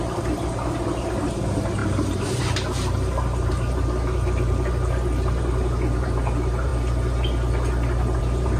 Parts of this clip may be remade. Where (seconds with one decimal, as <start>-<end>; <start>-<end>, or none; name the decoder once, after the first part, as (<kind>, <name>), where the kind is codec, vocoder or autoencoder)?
0.0-6.7 (vocoder, BigVGAN v2); 8.2-8.6